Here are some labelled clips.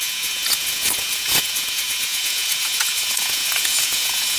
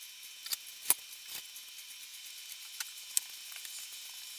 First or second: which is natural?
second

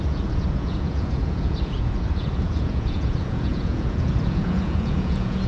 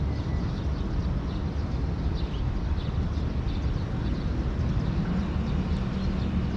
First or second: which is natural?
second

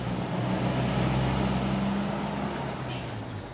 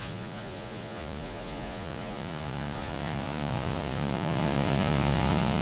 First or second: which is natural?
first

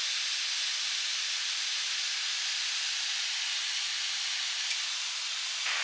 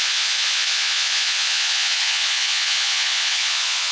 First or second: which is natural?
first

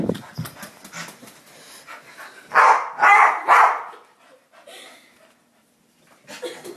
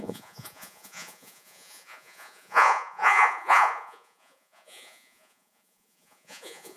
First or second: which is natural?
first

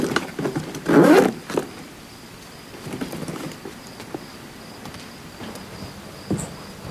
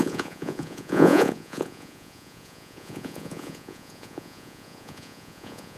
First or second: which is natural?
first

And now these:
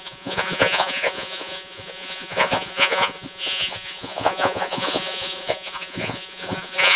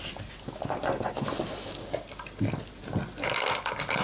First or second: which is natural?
second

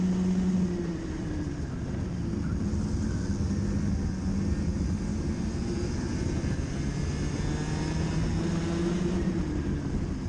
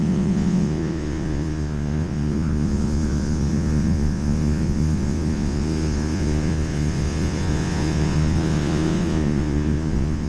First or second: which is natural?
first